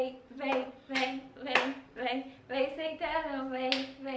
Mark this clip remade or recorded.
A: recorded